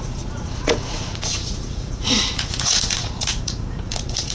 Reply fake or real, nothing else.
fake